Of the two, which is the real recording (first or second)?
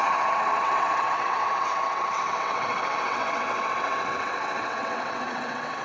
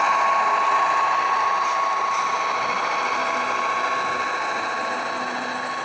second